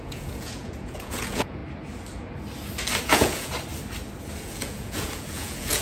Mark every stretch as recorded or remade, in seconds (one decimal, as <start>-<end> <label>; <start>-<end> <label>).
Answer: 0.0-1.6 remade; 1.6-3.0 recorded; 3.0-3.5 remade; 3.5-4.4 recorded; 4.4-5.8 remade

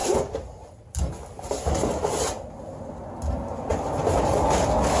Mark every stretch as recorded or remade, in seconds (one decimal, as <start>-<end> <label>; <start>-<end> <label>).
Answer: 0.0-5.0 recorded

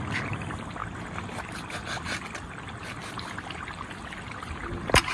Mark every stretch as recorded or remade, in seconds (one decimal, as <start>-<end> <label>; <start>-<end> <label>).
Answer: 0.0-5.1 recorded